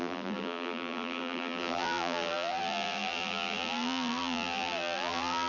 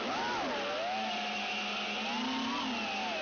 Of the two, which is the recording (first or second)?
second